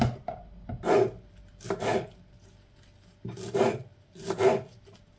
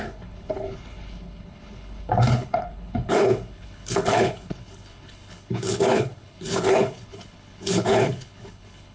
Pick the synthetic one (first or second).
second